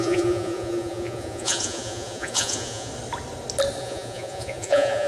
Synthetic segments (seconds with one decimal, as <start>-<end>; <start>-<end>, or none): 0.0-2.9; 3.8-5.1

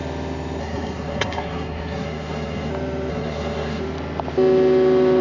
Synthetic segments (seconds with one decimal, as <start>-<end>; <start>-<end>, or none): 0.6-2.7; 3.1-3.8

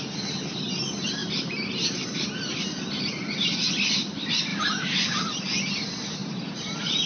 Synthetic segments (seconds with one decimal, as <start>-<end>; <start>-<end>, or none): 1.2-2.3; 4.5-5.2; 6.2-7.1

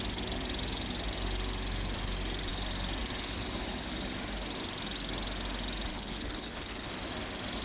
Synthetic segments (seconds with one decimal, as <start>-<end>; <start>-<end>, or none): 5.9-6.9